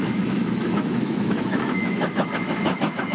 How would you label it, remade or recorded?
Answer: remade